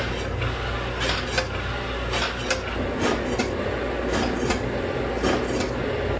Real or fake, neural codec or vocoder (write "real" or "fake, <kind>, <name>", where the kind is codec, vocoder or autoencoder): real